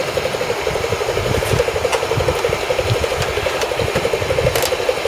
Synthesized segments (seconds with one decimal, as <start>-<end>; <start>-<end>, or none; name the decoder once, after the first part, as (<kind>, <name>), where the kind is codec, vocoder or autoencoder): none